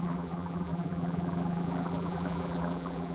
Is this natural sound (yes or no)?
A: no